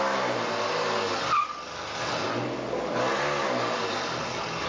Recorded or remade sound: recorded